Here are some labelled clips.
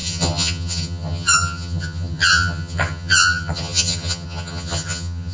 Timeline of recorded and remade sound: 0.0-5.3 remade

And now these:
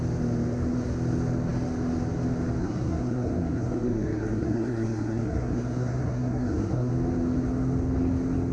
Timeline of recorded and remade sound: 0.0-2.6 recorded; 2.6-6.9 remade; 6.9-8.5 recorded

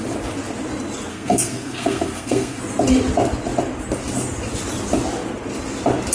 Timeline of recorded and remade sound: 0.0-1.1 recorded; 1.1-2.6 remade; 2.6-6.1 recorded

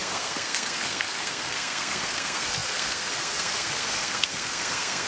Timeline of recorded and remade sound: 0.0-5.1 remade

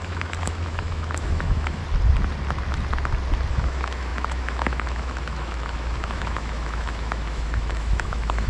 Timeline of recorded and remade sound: 0.0-1.8 remade; 1.8-3.5 recorded; 3.5-8.5 remade

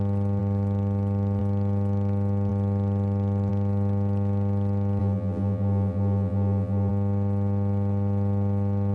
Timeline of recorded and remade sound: 0.0-5.0 recorded; 5.0-6.9 remade; 6.9-8.9 recorded

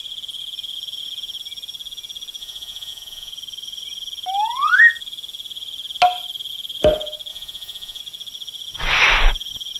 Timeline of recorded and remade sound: 0.0-2.4 recorded; 2.4-3.3 remade; 3.3-7.3 recorded; 7.3-8.0 remade; 8.0-9.8 recorded